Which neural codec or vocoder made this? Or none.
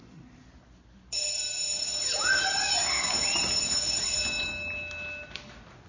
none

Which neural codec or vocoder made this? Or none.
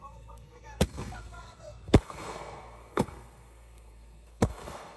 codec, SNAC